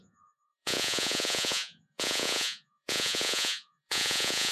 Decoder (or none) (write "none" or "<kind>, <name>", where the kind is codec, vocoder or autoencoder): vocoder, Vocos